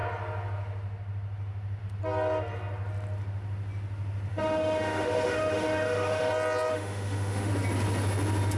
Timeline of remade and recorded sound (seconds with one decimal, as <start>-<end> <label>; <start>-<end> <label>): 0.0-4.3 recorded; 4.3-6.3 remade; 6.3-6.7 recorded; 6.7-7.5 remade; 7.5-8.6 recorded